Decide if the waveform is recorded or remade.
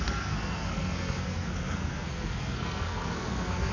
remade